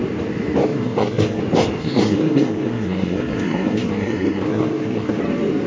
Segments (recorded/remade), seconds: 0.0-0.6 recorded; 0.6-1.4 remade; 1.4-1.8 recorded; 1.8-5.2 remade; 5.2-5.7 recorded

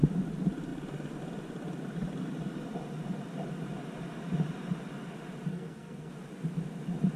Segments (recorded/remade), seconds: 0.0-5.5 recorded; 5.5-6.1 remade; 6.1-7.2 recorded

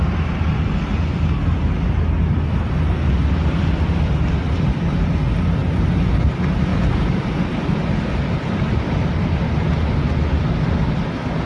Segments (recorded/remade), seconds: 0.0-11.5 recorded

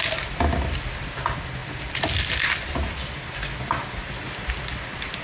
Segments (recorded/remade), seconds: 0.0-5.2 recorded